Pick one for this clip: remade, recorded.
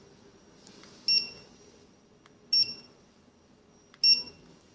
recorded